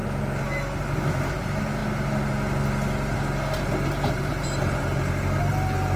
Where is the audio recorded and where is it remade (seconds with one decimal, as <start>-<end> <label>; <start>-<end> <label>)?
0.0-0.8 recorded; 0.8-1.8 remade; 1.8-5.4 recorded; 5.4-6.0 remade

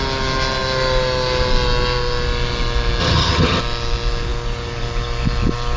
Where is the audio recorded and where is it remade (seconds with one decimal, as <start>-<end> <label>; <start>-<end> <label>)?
0.0-3.0 recorded; 3.0-3.6 remade; 3.6-5.8 recorded

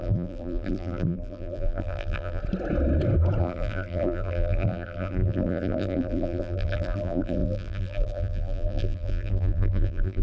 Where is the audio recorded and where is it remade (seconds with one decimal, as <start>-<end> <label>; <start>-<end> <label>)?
0.0-2.4 remade; 2.4-3.4 recorded; 3.4-10.2 remade